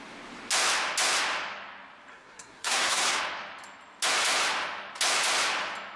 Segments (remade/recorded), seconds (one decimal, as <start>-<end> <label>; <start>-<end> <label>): 0.0-2.1 recorded; 2.1-3.2 remade; 3.2-6.0 recorded